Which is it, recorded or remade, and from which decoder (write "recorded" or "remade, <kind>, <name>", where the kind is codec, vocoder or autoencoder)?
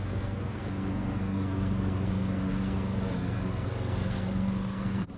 remade, codec, SNAC